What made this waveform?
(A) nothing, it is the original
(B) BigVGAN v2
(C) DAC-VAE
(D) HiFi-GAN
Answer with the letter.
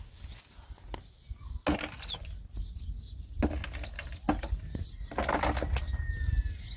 A